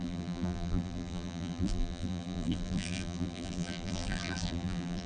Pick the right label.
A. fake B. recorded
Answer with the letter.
A